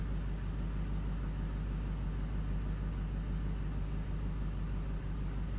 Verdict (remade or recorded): recorded